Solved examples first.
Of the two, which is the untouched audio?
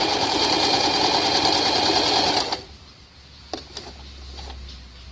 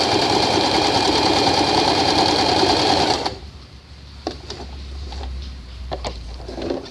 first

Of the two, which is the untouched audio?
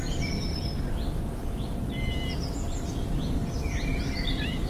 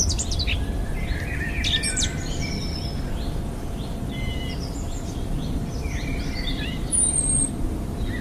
first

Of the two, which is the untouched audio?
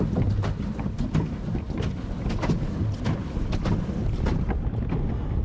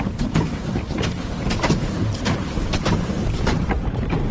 first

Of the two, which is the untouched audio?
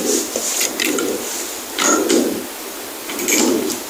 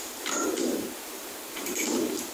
first